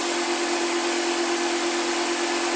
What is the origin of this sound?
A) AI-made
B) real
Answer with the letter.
B